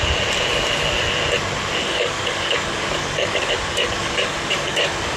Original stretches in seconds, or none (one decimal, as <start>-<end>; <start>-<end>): 0.0-1.8